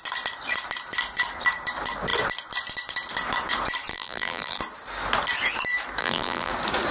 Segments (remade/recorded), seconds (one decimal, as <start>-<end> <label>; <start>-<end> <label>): 0.0-3.9 recorded; 3.9-4.6 remade; 4.6-6.0 recorded; 6.0-6.5 remade; 6.5-6.9 recorded